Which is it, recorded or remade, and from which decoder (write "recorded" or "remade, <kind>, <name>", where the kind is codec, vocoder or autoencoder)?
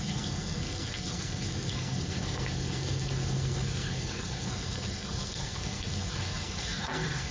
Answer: remade, codec, SNAC